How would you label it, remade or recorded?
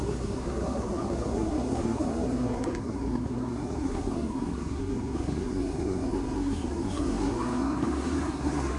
remade